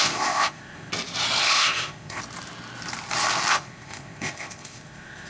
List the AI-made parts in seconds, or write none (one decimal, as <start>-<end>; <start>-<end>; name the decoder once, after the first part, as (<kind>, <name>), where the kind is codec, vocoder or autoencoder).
0.0-0.9 (codec, ZipCodec); 1.4-2.2; 3.5-5.3